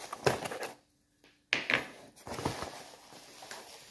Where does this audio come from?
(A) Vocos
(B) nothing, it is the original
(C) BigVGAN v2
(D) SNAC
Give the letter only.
B